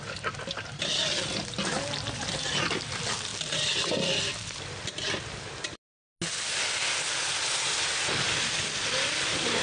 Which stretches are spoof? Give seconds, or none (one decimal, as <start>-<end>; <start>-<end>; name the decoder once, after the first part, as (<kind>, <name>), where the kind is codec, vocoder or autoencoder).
3.3-3.9 (vocoder, BigVGAN v2)